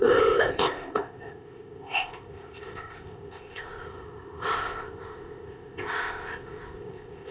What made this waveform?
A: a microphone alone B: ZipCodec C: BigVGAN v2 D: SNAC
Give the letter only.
B